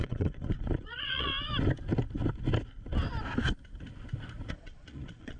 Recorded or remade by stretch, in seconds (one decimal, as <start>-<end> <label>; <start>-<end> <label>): 0.0-1.3 remade; 1.3-4.5 recorded; 4.5-5.4 remade